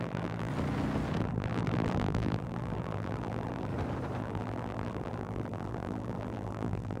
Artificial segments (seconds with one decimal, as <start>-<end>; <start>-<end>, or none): 0.0-0.5; 1.2-3.7; 4.2-7.0